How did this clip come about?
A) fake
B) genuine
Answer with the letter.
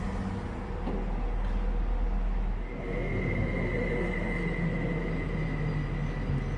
B